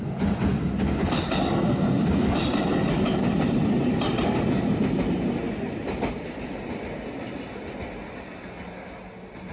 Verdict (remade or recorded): recorded